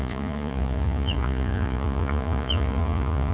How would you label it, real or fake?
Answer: fake